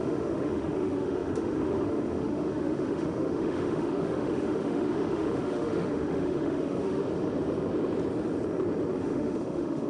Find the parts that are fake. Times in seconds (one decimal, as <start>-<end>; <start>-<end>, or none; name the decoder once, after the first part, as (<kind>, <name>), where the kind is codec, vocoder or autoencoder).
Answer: 0.0-7.0 (autoencoder, DAC-VAE); 9.0-9.9